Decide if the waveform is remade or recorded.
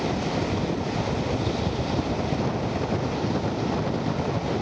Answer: recorded